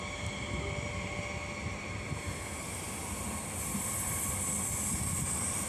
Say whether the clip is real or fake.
real